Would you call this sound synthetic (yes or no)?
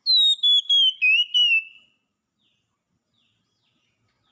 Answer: no